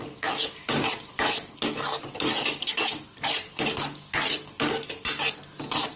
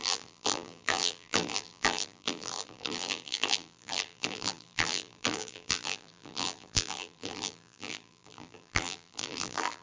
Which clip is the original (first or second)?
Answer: first